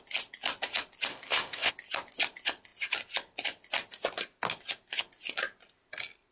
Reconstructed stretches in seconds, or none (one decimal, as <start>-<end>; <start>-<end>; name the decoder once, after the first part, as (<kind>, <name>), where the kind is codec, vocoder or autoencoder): 1.1-1.7 (codec, ZipCodec)